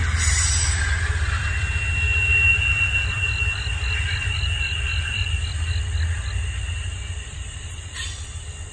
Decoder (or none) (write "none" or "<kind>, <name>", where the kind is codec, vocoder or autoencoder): none